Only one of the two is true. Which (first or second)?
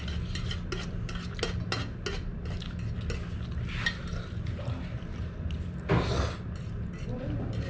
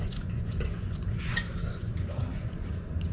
first